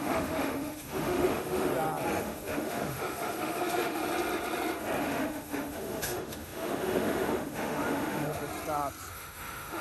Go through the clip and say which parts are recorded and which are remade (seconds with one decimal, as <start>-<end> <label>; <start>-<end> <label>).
0.0-1.7 remade; 1.7-2.2 recorded; 2.2-4.0 remade; 4.0-5.0 recorded; 5.0-8.5 remade; 8.5-9.1 recorded; 9.1-9.8 remade